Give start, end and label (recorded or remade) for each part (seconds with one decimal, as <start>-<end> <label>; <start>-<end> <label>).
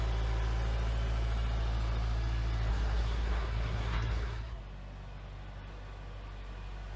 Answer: 0.0-2.7 recorded; 2.7-4.6 remade; 4.6-7.0 recorded